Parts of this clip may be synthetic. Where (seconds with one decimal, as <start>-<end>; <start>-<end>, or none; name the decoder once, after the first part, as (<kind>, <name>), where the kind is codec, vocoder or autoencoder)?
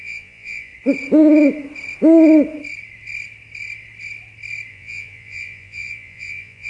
0.0-0.7 (vocoder, Vocos); 4.7-6.7